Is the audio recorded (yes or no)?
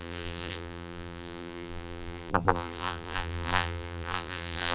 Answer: no